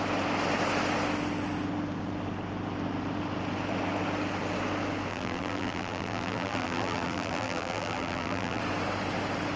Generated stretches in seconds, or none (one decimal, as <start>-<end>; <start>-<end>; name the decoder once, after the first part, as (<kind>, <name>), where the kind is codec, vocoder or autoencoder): 5.1-8.6 (vocoder, BigVGAN v2)